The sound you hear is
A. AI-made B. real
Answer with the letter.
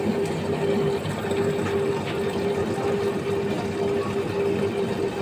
B